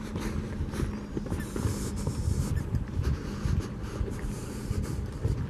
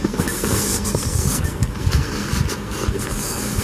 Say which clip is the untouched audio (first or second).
first